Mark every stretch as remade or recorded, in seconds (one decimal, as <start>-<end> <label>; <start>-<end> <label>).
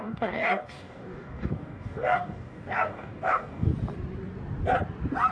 0.0-3.7 remade; 3.7-5.3 recorded